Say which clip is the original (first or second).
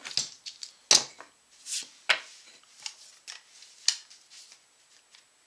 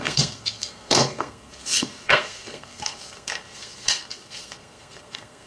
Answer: first